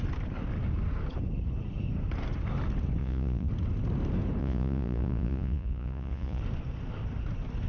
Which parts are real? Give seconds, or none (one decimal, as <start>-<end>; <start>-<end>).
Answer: 0.0-3.0; 3.5-4.4; 6.4-7.7